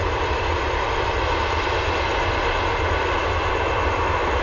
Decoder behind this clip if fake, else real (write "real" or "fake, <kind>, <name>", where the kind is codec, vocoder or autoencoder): real